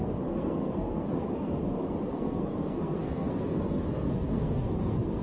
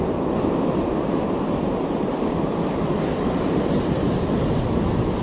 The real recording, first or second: second